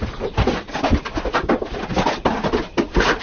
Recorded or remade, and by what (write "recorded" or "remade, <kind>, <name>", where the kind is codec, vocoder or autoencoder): recorded